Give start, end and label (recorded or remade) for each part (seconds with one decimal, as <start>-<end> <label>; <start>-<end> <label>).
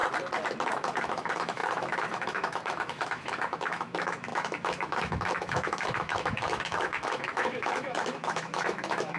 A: 0.0-0.7 recorded; 0.7-9.2 remade